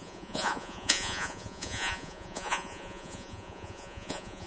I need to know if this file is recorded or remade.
remade